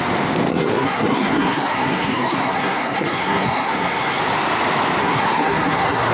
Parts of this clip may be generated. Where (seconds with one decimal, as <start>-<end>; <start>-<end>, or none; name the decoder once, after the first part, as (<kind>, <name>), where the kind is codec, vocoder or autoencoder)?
0.5-4.2 (codec, SNAC); 5.0-6.1